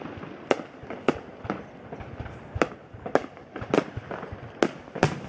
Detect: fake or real real